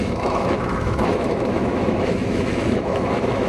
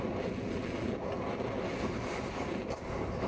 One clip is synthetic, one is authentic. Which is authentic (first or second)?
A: second